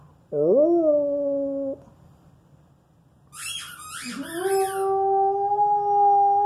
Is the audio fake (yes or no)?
no